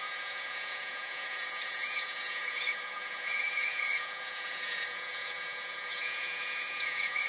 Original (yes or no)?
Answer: no